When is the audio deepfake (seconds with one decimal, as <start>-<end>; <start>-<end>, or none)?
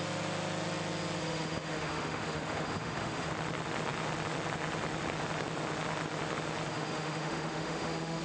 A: 1.2-3.3; 6.7-8.2